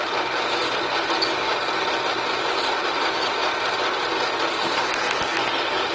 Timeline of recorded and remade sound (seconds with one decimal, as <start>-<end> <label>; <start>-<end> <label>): 0.0-0.6 remade; 0.6-2.9 recorded; 2.9-5.3 remade; 5.3-5.9 recorded